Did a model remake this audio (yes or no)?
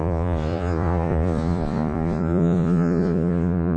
yes